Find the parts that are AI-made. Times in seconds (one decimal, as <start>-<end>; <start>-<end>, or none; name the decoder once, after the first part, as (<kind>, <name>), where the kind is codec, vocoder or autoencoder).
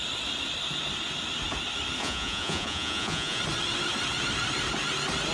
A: 2.0-3.4 (vocoder, Vocos)